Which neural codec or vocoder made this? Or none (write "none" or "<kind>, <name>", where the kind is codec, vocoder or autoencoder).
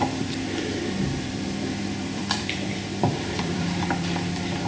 vocoder, BigVGAN v2